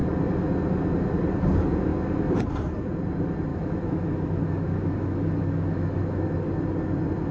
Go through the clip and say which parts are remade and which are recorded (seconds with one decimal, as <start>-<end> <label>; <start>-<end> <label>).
0.0-3.5 recorded; 3.5-6.5 remade; 6.5-7.3 recorded